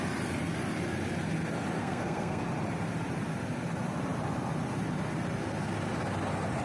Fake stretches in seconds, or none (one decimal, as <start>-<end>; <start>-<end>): 1.8-2.4